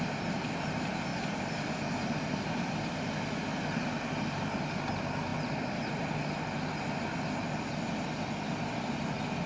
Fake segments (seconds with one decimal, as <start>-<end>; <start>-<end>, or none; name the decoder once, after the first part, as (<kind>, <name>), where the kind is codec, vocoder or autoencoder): 1.1-3.0 (vocoder, BigVGAN v2)